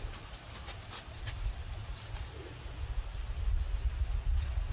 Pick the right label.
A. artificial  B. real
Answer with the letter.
B